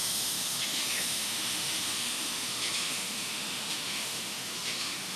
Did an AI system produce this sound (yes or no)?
yes